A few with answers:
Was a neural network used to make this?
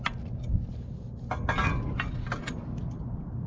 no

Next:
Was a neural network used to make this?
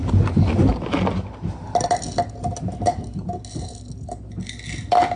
no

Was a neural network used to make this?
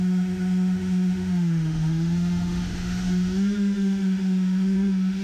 yes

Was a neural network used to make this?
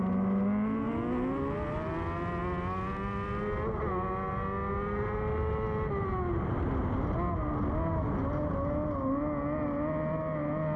no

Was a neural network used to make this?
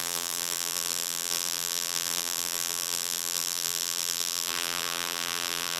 yes